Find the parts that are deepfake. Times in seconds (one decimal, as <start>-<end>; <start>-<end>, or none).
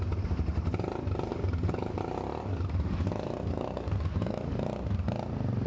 1.3-2.0; 2.5-5.1